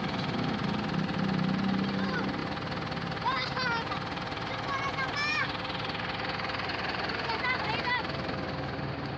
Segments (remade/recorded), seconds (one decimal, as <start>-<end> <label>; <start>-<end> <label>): 0.0-9.2 recorded